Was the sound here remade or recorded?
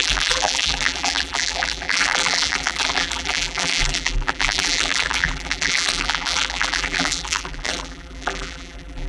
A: remade